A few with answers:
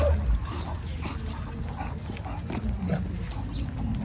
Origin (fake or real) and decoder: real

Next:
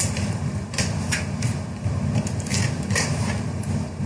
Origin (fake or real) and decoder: fake, vocoder, BigVGAN v2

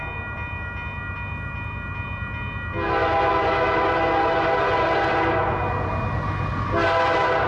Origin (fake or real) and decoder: real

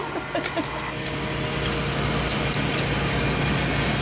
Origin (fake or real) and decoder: real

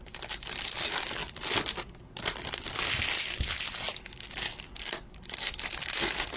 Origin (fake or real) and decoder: real